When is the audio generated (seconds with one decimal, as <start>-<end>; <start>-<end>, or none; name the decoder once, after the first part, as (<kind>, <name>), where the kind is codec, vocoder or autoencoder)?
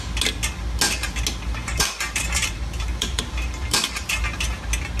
1.6-4.6 (vocoder, BigVGAN v2)